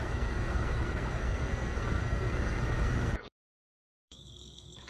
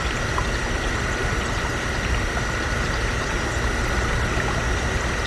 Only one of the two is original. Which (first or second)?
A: second